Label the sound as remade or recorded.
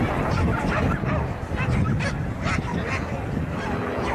recorded